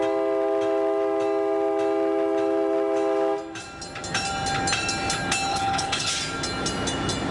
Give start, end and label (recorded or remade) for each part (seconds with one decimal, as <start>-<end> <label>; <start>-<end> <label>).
0.0-5.5 recorded; 5.5-6.1 remade; 6.1-7.3 recorded